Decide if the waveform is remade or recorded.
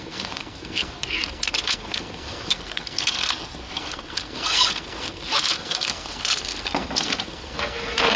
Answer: remade